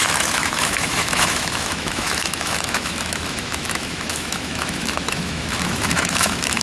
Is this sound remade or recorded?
remade